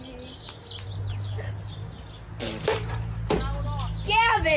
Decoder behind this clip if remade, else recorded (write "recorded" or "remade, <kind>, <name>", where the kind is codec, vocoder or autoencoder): recorded